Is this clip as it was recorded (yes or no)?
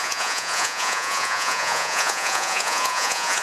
no